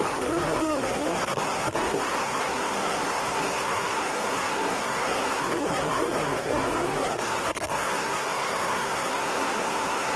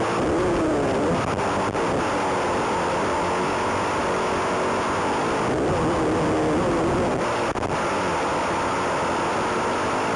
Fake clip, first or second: first